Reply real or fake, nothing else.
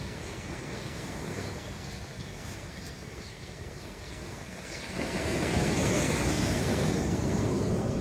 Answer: fake